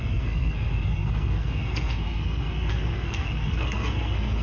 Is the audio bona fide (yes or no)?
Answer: no